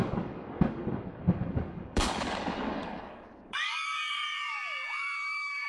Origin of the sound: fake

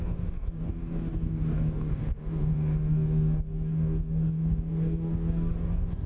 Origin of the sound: fake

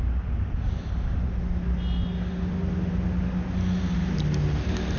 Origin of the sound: real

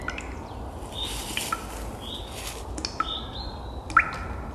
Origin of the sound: real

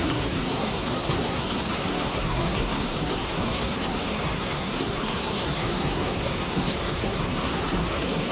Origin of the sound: fake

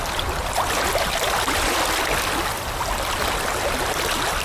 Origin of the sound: real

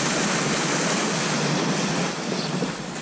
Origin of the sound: real